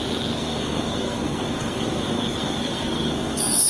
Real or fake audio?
fake